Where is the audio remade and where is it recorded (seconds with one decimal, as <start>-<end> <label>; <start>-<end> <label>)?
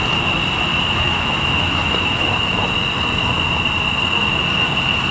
0.0-0.7 recorded; 0.7-2.7 remade; 2.7-5.1 recorded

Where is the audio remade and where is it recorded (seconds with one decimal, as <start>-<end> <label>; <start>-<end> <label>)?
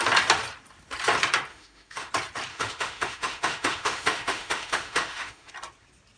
0.0-1.5 recorded; 1.5-2.1 remade; 2.1-2.5 recorded; 2.5-5.5 remade; 5.5-6.2 recorded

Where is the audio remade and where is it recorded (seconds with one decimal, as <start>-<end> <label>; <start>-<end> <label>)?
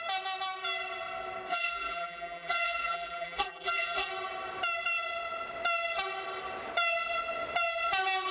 0.0-1.5 recorded; 1.5-4.1 remade; 4.1-8.3 recorded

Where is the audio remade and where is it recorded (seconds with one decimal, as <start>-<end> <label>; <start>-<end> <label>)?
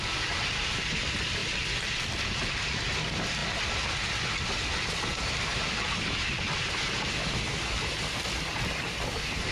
0.0-9.5 recorded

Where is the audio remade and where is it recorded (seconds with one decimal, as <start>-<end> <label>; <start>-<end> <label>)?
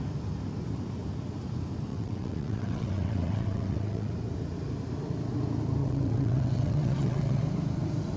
0.0-1.9 recorded; 1.9-4.1 remade; 4.1-5.8 recorded; 5.8-7.4 remade; 7.4-8.2 recorded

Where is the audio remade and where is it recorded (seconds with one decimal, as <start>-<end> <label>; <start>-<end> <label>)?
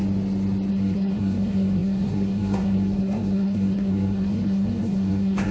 0.0-0.7 recorded; 0.7-5.5 remade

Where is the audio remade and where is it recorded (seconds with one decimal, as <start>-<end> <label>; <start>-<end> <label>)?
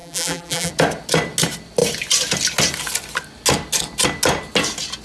0.0-0.7 remade; 0.7-5.0 recorded